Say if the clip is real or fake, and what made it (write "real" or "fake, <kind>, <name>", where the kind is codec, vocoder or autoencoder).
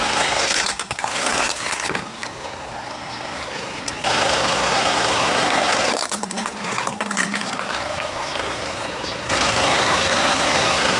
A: fake, codec, SNAC